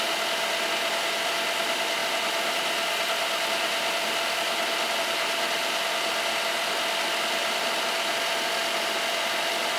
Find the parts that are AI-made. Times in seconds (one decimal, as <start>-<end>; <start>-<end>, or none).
none